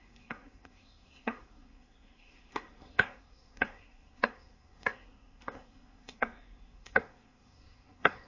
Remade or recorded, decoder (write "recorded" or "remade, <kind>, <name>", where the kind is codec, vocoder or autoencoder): remade, codec, SNAC